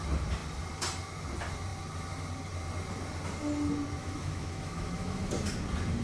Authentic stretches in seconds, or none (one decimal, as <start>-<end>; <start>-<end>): 0.0-4.0; 5.3-6.0